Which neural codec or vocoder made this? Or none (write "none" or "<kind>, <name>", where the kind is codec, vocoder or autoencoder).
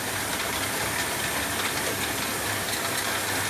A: none